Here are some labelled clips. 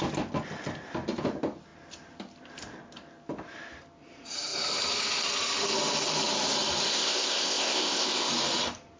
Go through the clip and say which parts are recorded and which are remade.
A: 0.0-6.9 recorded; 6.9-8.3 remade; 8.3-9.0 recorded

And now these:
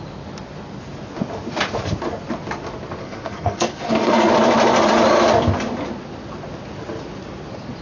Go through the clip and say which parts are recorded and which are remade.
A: 0.0-3.0 recorded; 3.0-4.3 remade; 4.3-7.8 recorded

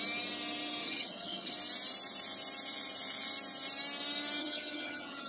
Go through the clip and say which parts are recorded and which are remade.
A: 0.0-0.8 recorded; 0.8-1.5 remade; 1.5-4.4 recorded; 4.4-5.3 remade

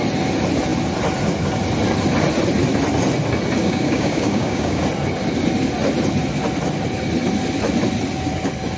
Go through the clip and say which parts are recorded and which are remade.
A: 0.0-3.6 recorded; 3.6-4.8 remade; 4.8-8.8 recorded

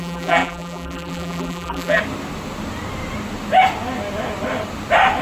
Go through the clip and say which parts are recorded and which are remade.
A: 0.0-2.0 remade; 2.0-5.2 recorded